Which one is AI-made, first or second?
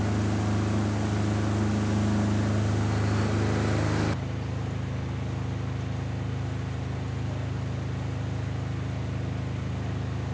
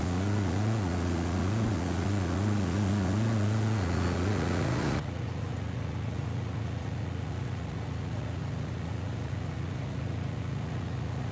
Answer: second